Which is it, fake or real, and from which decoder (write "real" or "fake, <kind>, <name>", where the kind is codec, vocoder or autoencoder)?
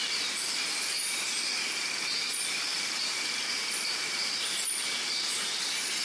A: real